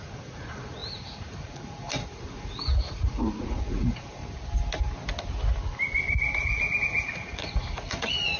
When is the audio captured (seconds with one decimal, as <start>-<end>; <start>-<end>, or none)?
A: 4.2-6.8